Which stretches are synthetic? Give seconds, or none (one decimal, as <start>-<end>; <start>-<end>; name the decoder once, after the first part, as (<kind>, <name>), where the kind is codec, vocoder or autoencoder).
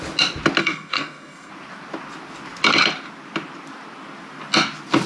0.6-1.5 (codec, SNAC)